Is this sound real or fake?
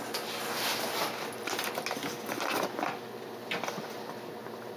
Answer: real